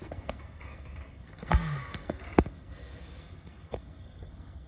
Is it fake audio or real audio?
fake